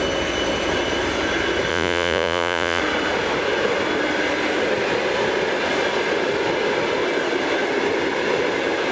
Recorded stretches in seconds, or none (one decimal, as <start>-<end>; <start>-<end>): 0.0-1.7; 2.8-8.9